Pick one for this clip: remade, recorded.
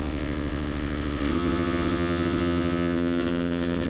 remade